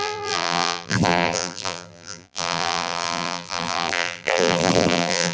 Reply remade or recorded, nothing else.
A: remade